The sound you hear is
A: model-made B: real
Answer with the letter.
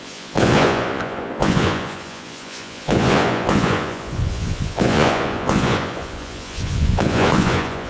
A